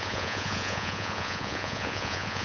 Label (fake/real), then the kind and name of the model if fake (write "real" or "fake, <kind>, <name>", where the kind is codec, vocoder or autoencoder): fake, vocoder, Vocos